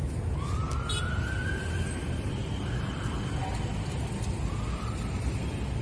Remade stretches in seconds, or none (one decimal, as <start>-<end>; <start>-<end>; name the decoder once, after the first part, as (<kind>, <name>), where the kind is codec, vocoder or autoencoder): none